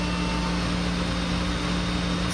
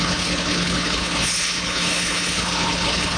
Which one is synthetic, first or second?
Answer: second